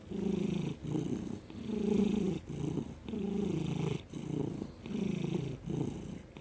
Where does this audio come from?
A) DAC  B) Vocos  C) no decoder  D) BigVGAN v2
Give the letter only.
C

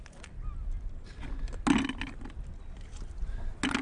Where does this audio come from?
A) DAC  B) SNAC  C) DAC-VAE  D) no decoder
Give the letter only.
D